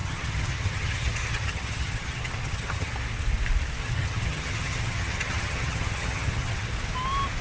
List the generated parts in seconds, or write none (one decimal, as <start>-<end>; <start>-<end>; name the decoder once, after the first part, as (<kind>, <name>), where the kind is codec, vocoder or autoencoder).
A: 0.0-2.9 (vocoder, HiFi-GAN); 3.8-6.7